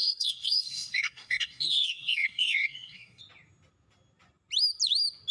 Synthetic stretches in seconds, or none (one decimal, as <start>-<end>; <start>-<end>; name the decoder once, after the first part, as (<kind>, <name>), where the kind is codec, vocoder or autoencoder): 0.0-3.2 (codec, SNAC)